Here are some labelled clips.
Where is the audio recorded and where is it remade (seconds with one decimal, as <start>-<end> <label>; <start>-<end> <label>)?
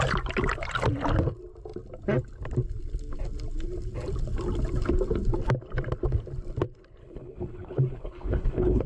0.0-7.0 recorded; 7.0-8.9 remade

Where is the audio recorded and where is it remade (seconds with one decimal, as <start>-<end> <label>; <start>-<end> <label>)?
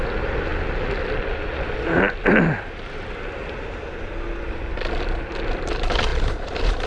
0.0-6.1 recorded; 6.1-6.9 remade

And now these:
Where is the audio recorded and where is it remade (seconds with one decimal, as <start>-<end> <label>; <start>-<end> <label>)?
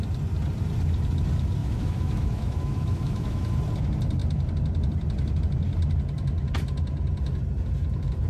0.0-1.6 recorded; 1.6-3.6 remade; 3.6-8.3 recorded